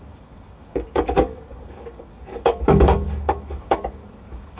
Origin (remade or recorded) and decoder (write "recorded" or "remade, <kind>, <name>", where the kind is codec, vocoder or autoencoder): remade, codec, DAC